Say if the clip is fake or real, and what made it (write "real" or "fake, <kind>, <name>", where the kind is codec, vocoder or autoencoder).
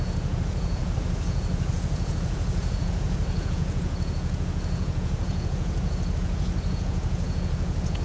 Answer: fake, vocoder, Vocos